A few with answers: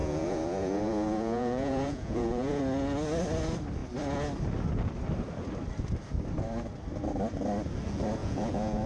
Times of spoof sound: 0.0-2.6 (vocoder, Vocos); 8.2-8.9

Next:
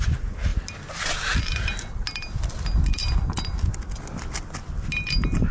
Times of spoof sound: none

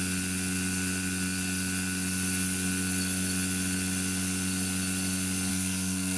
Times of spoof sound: 5.5-6.2 (codec, SNAC)